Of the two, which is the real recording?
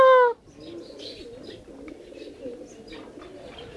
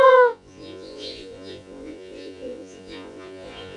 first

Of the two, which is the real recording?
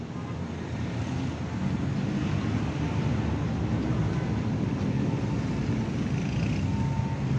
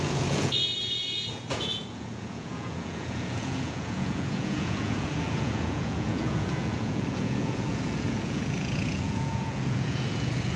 first